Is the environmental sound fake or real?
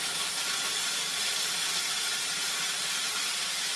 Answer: real